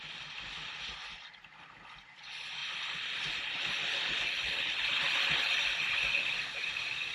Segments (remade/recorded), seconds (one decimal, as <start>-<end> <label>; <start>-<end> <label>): 0.0-7.1 recorded